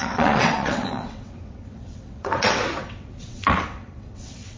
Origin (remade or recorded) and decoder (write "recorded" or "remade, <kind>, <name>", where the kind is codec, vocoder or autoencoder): remade, vocoder, WaveNeXt